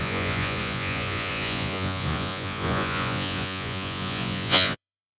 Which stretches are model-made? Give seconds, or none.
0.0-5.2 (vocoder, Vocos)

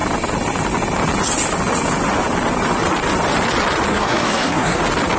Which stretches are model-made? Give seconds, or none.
3.9-4.8 (codec, SNAC)

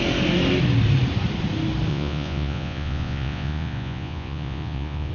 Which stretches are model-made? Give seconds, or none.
1.9-5.1 (vocoder, Vocos)

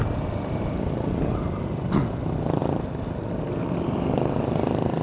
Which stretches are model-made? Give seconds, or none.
none

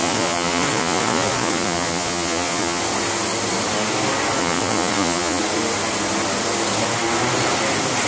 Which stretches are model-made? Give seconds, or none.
0.0-2.8 (vocoder, Vocos); 4.4-5.4

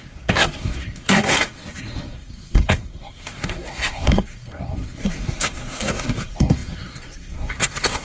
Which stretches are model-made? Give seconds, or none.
0.0-8.0 (codec, SNAC)